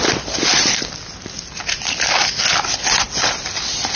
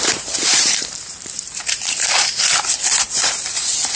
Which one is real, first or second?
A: first